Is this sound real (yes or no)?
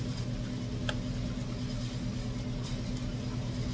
yes